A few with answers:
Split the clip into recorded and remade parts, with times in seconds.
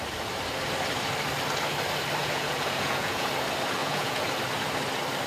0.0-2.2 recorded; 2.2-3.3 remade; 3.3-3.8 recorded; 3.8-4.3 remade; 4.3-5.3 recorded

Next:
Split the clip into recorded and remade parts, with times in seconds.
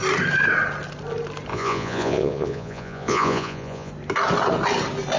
0.0-1.5 recorded; 1.5-3.9 remade; 3.9-5.2 recorded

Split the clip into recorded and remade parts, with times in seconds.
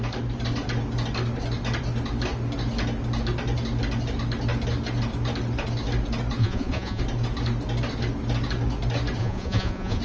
0.0-6.4 recorded; 6.4-7.0 remade; 7.0-9.2 recorded; 9.2-10.0 remade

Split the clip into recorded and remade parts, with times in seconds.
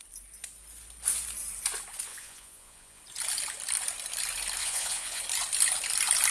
0.0-2.1 recorded; 2.1-3.0 remade; 3.0-4.6 recorded; 4.6-5.2 remade; 5.2-6.3 recorded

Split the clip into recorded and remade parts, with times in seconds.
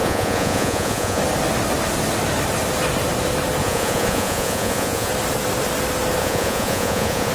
0.0-1.2 remade; 1.2-3.6 recorded; 3.6-5.1 remade; 5.1-6.2 recorded; 6.2-7.3 remade